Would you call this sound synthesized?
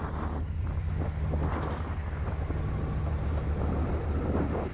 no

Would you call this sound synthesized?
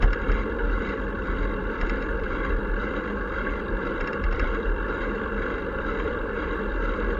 yes